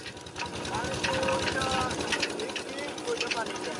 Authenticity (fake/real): real